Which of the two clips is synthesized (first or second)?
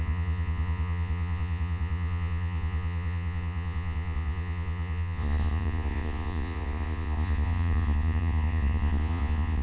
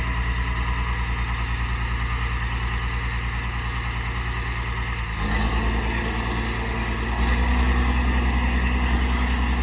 first